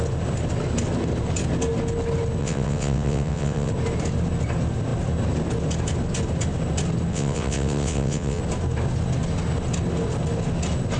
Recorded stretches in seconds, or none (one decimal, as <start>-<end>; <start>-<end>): 0.0-2.4; 3.7-7.1; 8.4-11.0